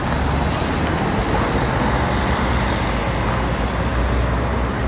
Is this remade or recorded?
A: recorded